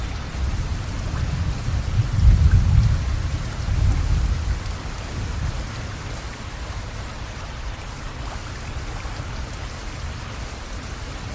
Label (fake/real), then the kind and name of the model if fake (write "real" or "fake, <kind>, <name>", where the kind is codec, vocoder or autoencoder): real